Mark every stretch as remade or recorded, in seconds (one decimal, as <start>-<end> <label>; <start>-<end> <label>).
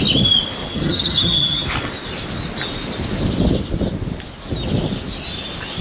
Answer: 0.0-0.6 recorded; 0.6-1.7 remade; 1.7-5.8 recorded